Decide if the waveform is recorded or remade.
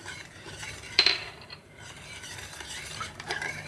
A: remade